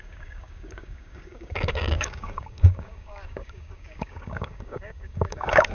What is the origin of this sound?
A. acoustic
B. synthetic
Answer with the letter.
B